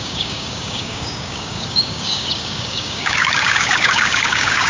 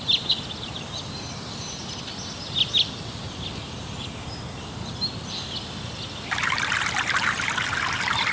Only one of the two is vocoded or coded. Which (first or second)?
first